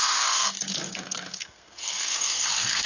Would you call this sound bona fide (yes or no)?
no